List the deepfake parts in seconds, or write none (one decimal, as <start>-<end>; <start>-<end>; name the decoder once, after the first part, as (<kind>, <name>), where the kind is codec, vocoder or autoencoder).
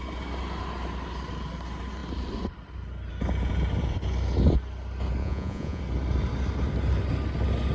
5.2-5.8 (vocoder, Vocos)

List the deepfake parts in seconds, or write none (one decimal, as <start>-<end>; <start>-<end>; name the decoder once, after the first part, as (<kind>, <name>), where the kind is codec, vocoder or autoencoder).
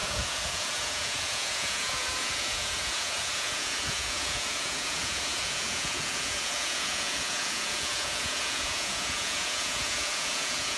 0.0-10.8 (vocoder, Vocos)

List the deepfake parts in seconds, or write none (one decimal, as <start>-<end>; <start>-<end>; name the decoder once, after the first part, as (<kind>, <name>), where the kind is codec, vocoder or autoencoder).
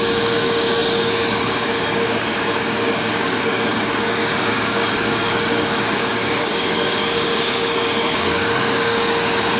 0.0-9.6 (codec, DAC)